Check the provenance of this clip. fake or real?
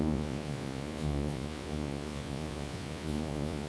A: fake